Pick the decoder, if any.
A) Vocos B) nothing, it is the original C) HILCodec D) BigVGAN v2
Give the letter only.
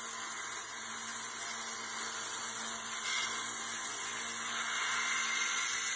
B